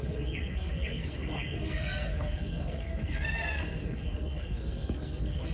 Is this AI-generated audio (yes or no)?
yes